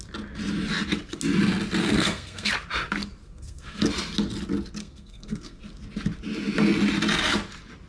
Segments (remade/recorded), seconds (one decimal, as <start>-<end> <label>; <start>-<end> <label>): 0.0-1.8 recorded; 1.8-2.5 remade; 2.5-3.2 recorded; 3.2-3.8 remade; 3.8-4.8 recorded; 4.8-5.6 remade; 5.6-7.9 recorded